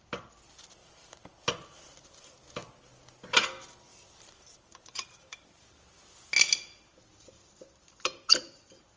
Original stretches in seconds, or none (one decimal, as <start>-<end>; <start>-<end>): 0.0-0.8; 1.4-3.9; 6.0-7.1; 8.3-9.0

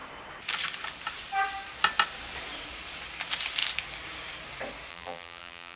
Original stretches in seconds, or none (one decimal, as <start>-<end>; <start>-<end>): 0.0-4.9